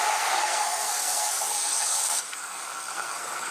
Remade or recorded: remade